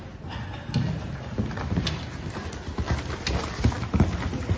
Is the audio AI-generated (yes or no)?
no